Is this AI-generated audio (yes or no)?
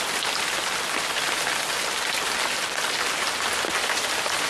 no